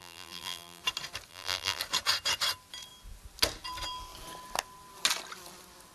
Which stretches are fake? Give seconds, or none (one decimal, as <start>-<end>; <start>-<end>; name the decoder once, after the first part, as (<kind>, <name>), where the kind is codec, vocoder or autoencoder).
0.0-0.8 (vocoder, BigVGAN v2); 1.3-1.8